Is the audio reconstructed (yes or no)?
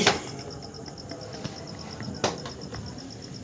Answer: no